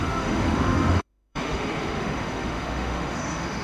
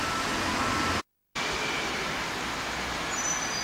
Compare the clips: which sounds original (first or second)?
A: second